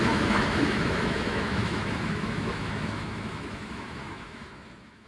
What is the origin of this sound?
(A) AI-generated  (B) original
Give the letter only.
A